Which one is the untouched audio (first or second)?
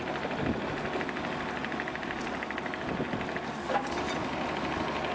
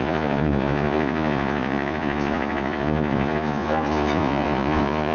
first